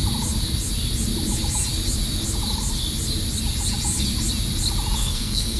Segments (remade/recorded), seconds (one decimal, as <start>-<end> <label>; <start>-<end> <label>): 0.0-5.0 recorded; 5.0-5.6 remade